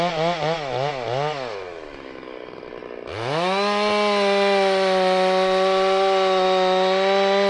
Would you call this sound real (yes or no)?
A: yes